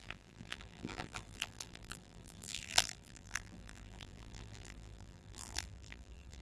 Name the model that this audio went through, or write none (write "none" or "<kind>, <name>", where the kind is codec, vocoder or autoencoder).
vocoder, BigVGAN v2